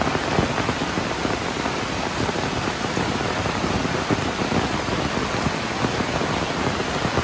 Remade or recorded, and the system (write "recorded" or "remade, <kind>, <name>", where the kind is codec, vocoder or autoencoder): recorded